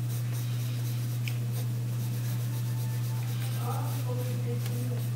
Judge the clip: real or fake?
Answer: real